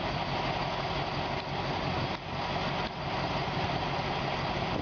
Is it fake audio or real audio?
real